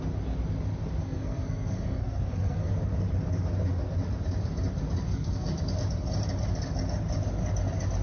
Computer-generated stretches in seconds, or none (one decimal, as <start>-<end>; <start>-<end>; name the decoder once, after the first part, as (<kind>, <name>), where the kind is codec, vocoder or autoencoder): 1.0-2.7 (codec, SNAC); 5.0-5.5